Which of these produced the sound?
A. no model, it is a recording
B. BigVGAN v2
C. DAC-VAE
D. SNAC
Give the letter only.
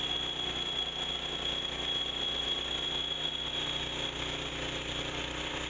A